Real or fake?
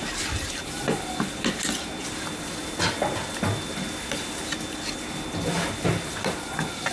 real